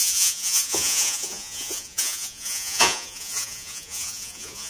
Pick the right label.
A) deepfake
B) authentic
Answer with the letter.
A